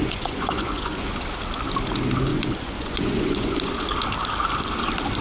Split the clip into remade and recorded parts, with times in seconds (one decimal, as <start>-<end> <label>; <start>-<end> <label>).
0.0-1.0 remade; 1.0-2.3 recorded; 2.3-3.7 remade; 3.7-5.2 recorded